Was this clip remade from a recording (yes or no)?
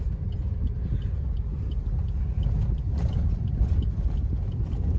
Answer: no